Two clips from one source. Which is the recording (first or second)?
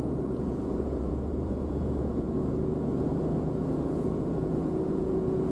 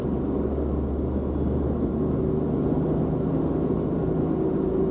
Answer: second